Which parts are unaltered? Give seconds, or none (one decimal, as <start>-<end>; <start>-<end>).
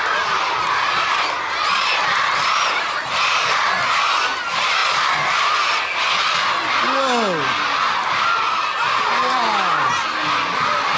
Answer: 0.0-11.0